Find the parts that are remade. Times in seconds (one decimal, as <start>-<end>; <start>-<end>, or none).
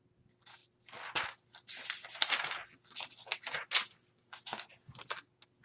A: 0.6-2.9